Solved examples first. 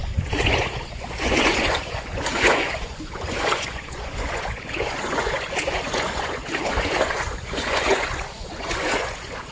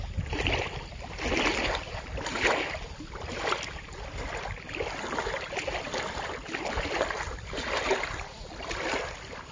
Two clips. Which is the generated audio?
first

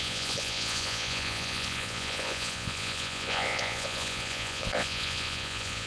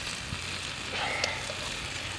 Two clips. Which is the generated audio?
first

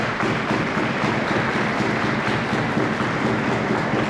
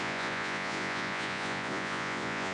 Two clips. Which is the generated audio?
second